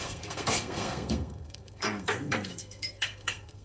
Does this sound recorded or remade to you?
remade